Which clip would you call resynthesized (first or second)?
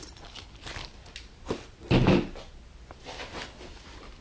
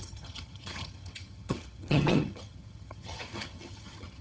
second